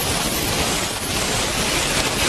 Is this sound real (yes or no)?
yes